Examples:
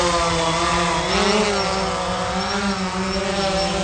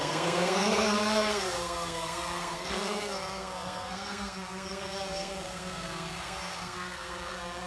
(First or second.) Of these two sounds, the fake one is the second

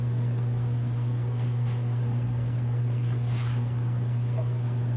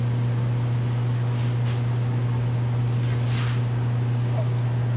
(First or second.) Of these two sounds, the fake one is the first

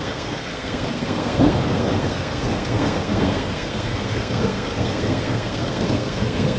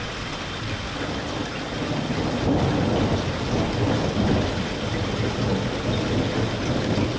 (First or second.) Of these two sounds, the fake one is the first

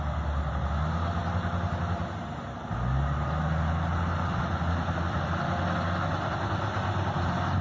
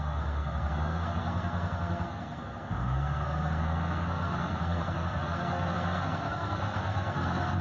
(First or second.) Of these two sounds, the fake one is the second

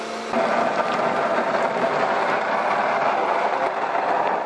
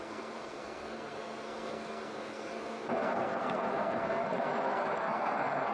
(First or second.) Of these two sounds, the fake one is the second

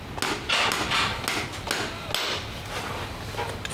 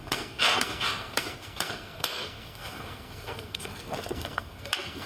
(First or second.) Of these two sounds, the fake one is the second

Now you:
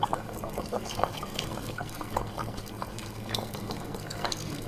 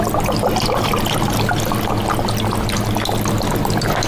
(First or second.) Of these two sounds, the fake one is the first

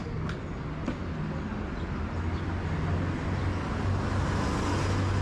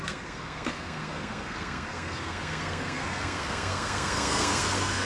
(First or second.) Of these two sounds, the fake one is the second